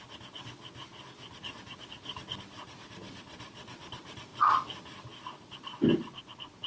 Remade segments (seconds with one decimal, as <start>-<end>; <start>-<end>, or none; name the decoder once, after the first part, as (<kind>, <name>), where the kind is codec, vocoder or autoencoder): none